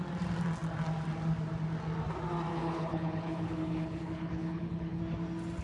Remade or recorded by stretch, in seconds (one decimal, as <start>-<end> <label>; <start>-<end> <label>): 0.0-2.5 recorded; 2.5-5.0 remade; 5.0-5.6 recorded